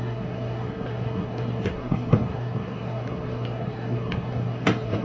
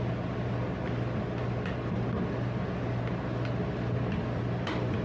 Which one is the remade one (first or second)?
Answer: first